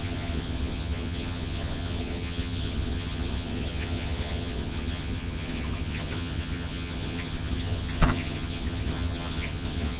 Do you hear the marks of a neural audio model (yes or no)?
yes